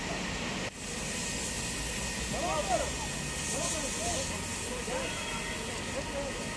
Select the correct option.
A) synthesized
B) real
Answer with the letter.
B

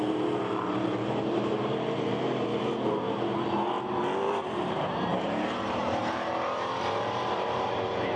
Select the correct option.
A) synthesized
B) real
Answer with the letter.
A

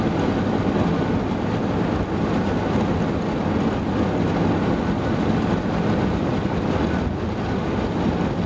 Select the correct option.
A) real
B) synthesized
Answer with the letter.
A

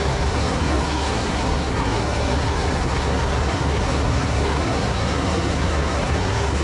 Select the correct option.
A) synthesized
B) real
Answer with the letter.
A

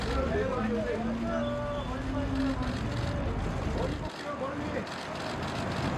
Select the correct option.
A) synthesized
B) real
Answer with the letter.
B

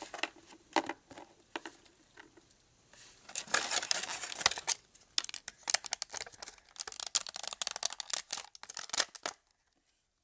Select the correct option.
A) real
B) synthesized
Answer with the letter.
A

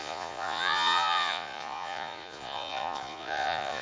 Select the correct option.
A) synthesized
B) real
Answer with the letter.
A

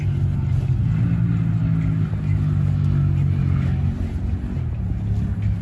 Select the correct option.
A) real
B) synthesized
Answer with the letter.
A